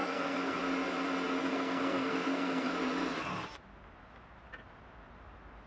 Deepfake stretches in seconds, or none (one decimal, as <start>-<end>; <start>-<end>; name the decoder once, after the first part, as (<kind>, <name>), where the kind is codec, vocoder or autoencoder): 0.0-0.6 (codec, SNAC); 1.4-2.7